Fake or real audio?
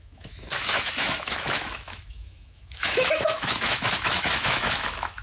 fake